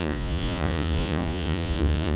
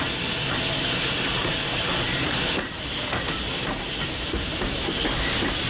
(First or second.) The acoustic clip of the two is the second